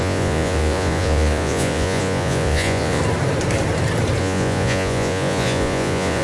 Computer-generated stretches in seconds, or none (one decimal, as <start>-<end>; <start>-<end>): 0.0-3.0; 4.2-6.2